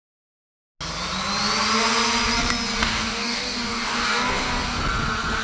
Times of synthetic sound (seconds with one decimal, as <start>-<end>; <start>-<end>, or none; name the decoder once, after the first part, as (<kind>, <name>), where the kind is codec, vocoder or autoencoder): 2.8-4.8 (codec, DAC)